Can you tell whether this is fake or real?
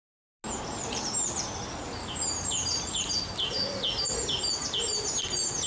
real